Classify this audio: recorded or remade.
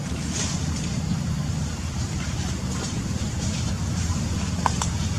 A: remade